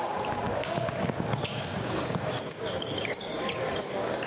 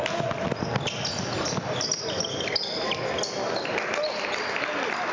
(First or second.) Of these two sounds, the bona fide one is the second